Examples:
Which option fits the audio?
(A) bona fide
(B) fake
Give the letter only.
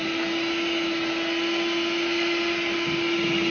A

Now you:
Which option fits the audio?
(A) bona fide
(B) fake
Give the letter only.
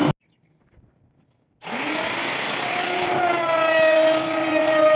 A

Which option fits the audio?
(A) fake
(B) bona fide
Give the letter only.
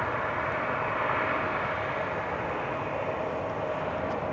B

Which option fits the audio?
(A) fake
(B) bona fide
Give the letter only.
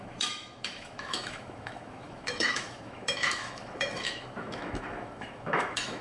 A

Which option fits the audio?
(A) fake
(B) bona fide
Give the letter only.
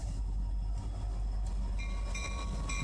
B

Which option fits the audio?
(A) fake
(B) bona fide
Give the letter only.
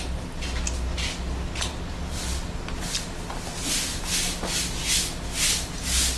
B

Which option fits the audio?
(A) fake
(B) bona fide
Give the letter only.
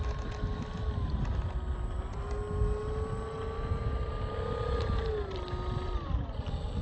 B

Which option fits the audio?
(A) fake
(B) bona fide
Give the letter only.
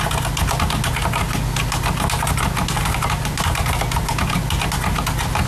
B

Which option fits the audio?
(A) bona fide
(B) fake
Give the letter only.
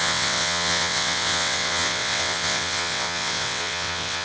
B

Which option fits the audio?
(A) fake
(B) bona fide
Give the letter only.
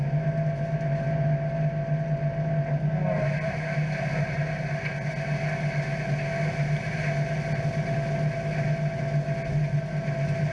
B